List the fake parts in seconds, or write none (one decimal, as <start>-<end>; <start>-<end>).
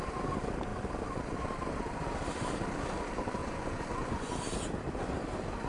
3.4-4.3